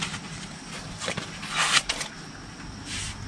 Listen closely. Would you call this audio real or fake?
real